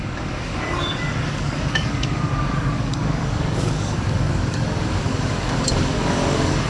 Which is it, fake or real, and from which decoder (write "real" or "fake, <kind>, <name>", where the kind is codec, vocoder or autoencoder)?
fake, codec, DAC